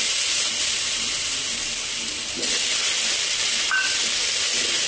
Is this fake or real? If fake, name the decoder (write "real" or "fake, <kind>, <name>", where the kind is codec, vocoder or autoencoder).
real